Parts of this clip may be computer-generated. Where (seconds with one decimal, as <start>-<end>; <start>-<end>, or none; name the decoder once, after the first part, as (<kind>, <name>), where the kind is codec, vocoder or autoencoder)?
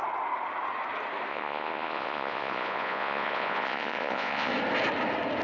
1.3-4.5 (vocoder, Vocos)